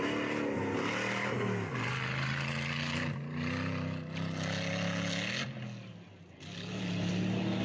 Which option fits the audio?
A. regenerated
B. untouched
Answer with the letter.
B